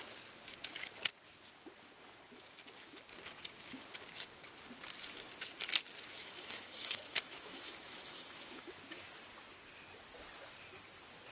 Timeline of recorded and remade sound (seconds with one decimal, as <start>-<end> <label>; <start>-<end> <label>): 0.0-6.1 recorded; 6.1-8.7 remade; 8.7-11.3 recorded